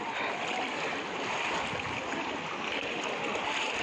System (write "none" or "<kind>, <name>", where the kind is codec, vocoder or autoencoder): none